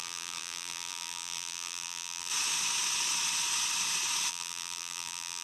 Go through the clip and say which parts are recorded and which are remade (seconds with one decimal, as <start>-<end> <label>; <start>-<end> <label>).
0.0-2.3 remade; 2.3-4.3 recorded; 4.3-5.4 remade

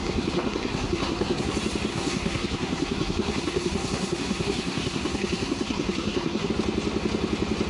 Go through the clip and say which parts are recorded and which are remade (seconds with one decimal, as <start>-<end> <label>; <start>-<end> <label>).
0.0-1.5 remade; 1.5-1.9 recorded; 1.9-6.5 remade; 6.5-7.7 recorded

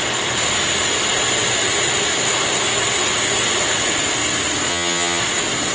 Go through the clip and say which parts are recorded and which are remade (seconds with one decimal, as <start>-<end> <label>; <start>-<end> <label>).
0.0-4.7 recorded; 4.7-5.2 remade; 5.2-5.7 recorded

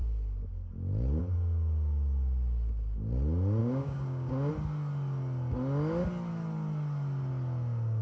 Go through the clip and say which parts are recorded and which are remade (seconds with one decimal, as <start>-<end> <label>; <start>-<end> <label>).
0.0-3.6 recorded; 3.6-4.5 remade; 4.5-8.0 recorded

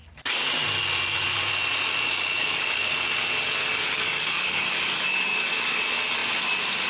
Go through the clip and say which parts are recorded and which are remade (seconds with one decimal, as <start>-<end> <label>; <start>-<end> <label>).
0.0-2.4 recorded; 2.4-2.9 remade; 2.9-3.6 recorded; 3.6-5.8 remade; 5.8-6.9 recorded

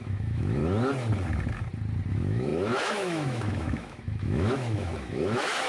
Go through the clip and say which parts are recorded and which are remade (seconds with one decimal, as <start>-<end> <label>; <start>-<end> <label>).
0.0-0.6 remade; 0.6-2.1 recorded; 2.1-5.7 remade

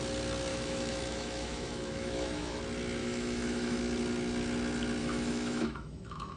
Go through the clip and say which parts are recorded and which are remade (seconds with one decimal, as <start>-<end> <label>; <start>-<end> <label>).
0.0-0.5 recorded; 0.5-2.6 remade; 2.6-3.0 recorded; 3.0-3.8 remade; 3.8-5.0 recorded; 5.0-6.4 remade

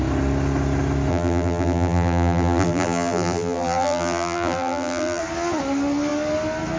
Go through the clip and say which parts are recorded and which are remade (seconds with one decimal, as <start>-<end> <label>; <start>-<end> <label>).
0.0-1.1 recorded; 1.1-5.2 remade; 5.2-6.8 recorded